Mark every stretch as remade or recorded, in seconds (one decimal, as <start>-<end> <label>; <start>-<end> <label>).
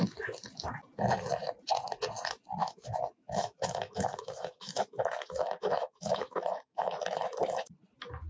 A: 0.0-2.6 recorded; 2.6-6.9 remade; 6.9-8.3 recorded